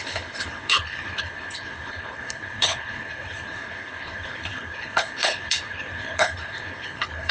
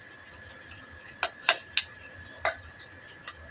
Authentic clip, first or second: second